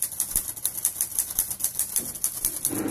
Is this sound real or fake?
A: real